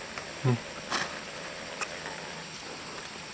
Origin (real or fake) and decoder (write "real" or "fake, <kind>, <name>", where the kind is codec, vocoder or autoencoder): real